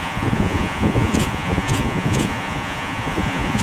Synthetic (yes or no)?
yes